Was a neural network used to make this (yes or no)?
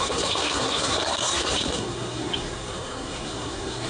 yes